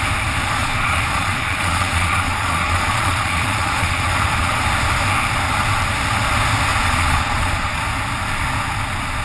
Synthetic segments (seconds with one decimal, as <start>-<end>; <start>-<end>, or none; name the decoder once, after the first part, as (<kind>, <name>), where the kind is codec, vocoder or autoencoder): 0.6-4.6 (vocoder, Vocos); 6.7-7.8